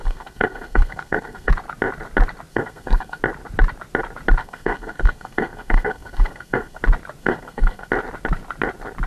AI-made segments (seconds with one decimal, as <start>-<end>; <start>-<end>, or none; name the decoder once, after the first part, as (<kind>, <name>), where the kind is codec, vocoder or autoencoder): 0.0-1.5 (codec, SNAC); 2.5-3.2; 4.4-6.8; 7.2-7.9